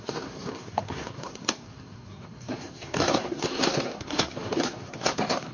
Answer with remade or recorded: remade